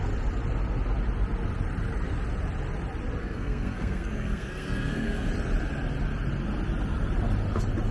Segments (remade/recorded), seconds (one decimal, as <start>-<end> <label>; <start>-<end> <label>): 0.0-3.2 recorded; 3.2-5.3 remade; 5.3-7.9 recorded